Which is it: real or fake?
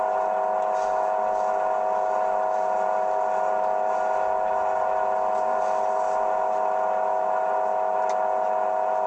real